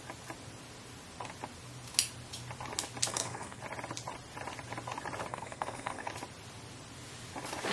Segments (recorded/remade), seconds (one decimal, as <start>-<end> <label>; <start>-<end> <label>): 0.0-3.1 recorded; 3.1-3.6 remade; 3.6-5.3 recorded; 5.3-6.1 remade; 6.1-7.7 recorded